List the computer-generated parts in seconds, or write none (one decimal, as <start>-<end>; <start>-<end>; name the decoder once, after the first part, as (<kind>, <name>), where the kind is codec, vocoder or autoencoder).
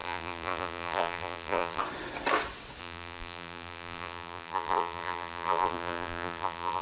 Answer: 0.0-1.8 (vocoder, BigVGAN v2); 2.8-6.8